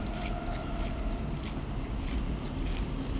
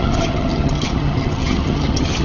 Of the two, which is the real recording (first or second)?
first